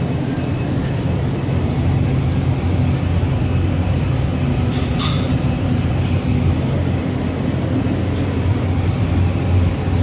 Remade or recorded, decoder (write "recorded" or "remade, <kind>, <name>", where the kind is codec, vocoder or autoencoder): recorded